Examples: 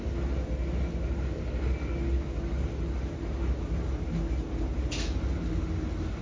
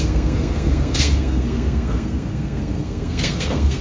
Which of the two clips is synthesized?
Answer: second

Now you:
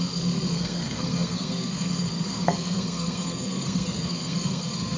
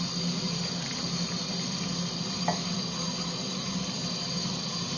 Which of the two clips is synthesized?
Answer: first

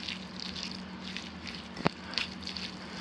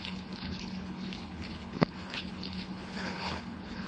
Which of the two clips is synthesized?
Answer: second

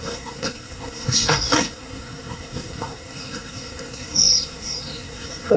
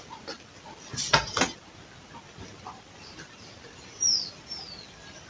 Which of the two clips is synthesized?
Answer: first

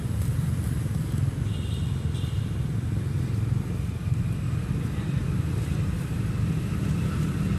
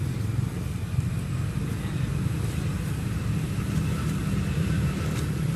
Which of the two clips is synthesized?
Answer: first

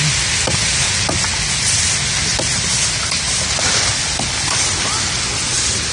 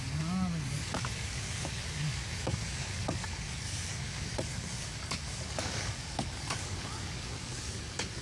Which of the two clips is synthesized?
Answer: second